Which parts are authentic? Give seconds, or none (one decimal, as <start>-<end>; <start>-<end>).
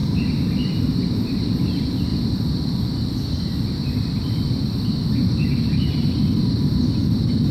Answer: 2.1-3.8